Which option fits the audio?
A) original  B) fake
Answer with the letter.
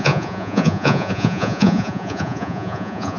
B